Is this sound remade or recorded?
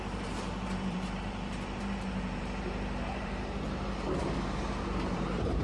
remade